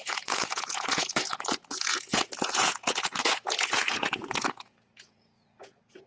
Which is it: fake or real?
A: fake